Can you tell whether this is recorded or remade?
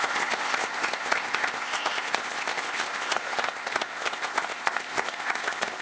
remade